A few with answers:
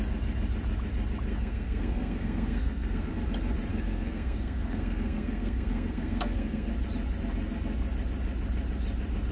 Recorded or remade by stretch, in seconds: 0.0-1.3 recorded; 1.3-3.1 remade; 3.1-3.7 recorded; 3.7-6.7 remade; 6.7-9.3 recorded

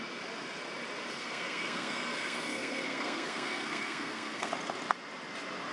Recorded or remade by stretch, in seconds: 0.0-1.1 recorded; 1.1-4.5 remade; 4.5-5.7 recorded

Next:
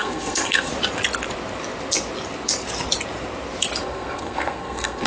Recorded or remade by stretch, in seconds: 0.0-0.7 remade; 0.7-3.8 recorded; 3.8-5.1 remade

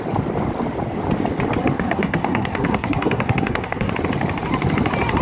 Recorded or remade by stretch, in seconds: 0.0-1.6 recorded; 1.6-3.9 remade; 3.9-5.2 recorded